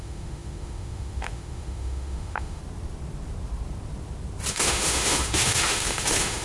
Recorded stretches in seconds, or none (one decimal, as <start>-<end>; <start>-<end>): 2.6-4.5